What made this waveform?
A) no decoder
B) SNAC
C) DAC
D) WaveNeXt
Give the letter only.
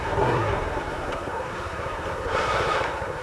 B